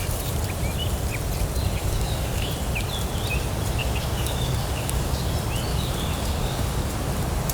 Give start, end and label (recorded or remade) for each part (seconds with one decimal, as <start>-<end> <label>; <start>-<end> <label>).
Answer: 0.0-1.8 recorded; 1.8-2.5 remade; 2.5-3.8 recorded; 3.8-5.3 remade; 5.3-5.7 recorded; 5.7-6.9 remade; 6.9-7.5 recorded